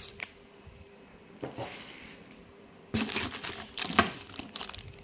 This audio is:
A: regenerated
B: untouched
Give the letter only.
B